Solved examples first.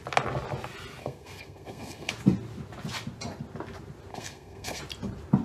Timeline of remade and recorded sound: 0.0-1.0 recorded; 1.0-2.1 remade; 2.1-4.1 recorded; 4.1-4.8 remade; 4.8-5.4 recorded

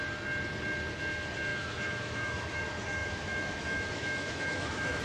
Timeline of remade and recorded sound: 0.0-1.5 recorded; 1.5-2.6 remade; 2.6-3.0 recorded; 3.0-5.0 remade

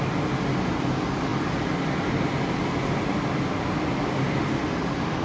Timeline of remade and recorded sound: 0.0-5.2 recorded

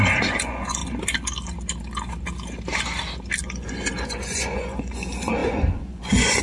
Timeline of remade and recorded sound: 0.0-0.8 remade; 0.8-3.4 recorded; 3.4-6.4 remade

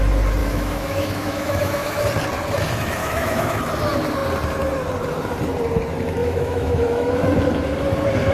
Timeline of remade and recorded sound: 0.0-0.4 recorded; 0.4-2.0 remade; 2.0-3.0 recorded; 3.0-3.6 remade; 3.6-6.2 recorded; 6.2-7.1 remade; 7.1-8.3 recorded

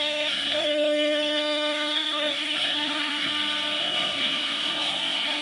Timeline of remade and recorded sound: 0.0-3.3 remade; 3.3-3.8 recorded; 3.8-5.4 remade

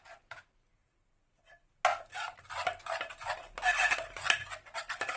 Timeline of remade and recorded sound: 0.0-5.2 recorded

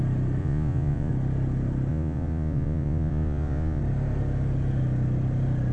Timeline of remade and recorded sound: 0.0-0.4 recorded; 0.4-1.1 remade; 1.1-1.9 recorded; 1.9-3.8 remade; 3.8-5.7 recorded